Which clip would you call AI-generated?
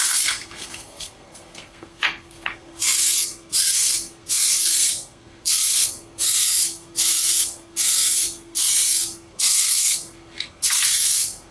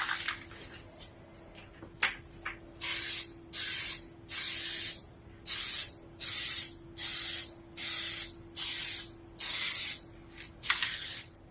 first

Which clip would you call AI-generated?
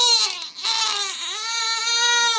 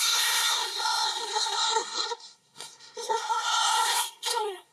second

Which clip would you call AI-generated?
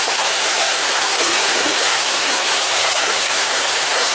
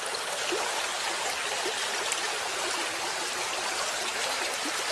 first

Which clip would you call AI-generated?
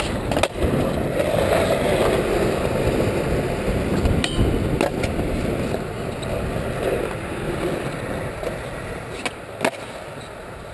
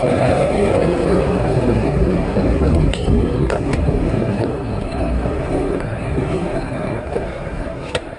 second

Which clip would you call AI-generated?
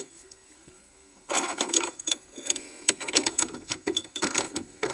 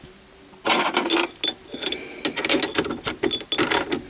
first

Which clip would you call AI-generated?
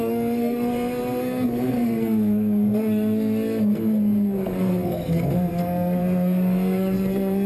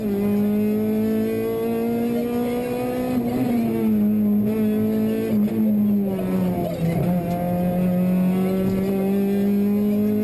first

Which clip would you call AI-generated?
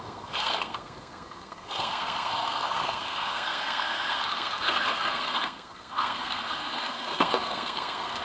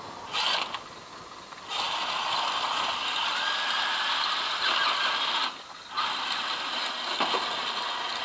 first